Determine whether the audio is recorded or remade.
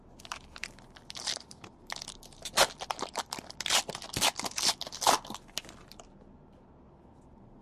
recorded